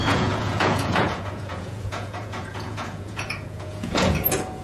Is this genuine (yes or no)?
no